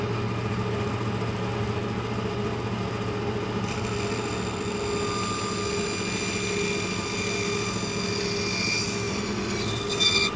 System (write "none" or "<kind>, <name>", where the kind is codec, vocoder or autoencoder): none